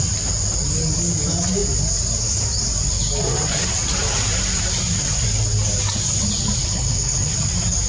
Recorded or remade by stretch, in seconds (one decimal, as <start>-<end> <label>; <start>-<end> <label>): 0.0-6.6 recorded; 6.6-7.3 remade; 7.3-7.9 recorded